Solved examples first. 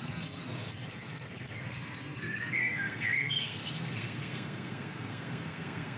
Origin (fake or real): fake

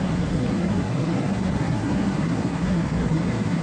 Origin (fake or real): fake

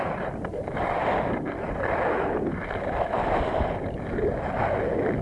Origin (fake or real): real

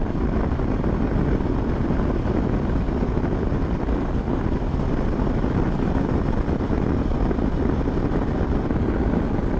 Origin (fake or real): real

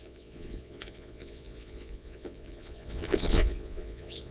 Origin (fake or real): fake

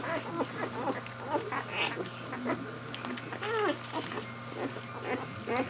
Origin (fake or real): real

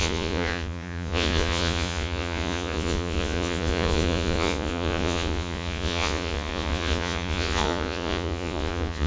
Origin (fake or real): fake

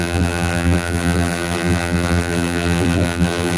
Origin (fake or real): fake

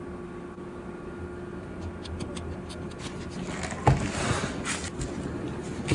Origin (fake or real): real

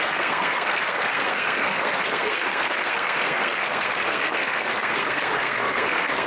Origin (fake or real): fake